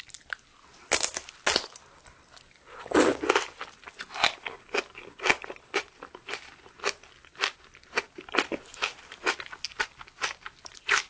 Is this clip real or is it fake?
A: real